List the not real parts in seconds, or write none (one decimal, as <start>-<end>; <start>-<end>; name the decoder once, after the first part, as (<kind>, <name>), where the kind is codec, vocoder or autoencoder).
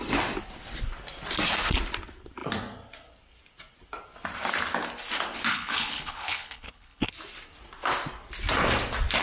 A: 5.5-7.1 (codec, HILCodec)